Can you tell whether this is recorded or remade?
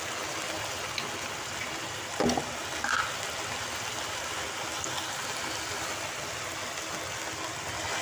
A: recorded